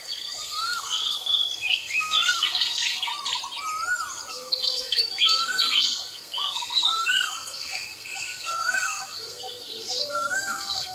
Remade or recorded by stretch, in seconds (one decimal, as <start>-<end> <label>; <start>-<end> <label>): 0.0-3.1 remade; 3.1-4.3 recorded; 4.3-10.9 remade